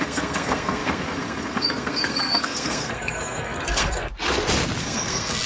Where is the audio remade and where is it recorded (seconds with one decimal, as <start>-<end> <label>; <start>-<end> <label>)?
0.0-4.1 remade; 4.1-4.8 recorded; 4.8-5.5 remade